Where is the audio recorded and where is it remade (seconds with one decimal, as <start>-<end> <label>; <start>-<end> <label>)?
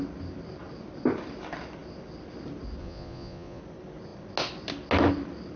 0.0-2.8 recorded; 2.8-3.6 remade; 3.6-5.6 recorded